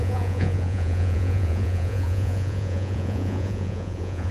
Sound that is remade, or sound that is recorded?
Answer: remade